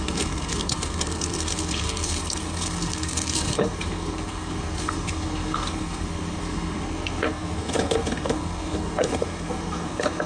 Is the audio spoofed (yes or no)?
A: yes